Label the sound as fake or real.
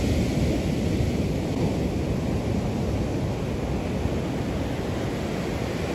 real